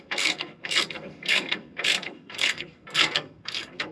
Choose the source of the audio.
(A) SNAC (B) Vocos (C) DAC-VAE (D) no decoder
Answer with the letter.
A